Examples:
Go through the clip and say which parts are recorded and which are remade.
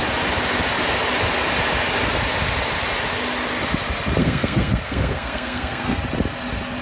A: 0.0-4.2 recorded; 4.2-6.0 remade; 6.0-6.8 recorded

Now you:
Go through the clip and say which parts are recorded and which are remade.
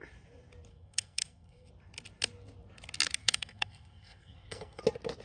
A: 0.0-0.7 recorded; 0.7-1.7 remade; 1.7-3.2 recorded; 3.2-4.8 remade; 4.8-5.2 recorded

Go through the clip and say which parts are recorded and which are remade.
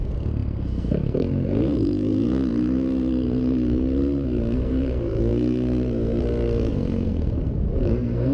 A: 0.0-8.3 remade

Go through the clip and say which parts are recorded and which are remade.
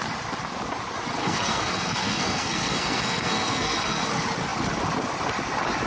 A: 0.0-1.2 recorded; 1.2-4.1 remade; 4.1-5.9 recorded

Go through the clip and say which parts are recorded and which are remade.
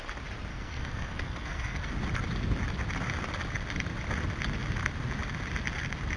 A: 0.0-0.5 recorded; 0.5-1.9 remade; 1.9-6.2 recorded